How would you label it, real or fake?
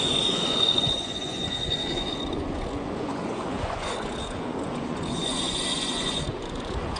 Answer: fake